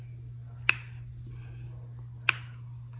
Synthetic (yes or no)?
no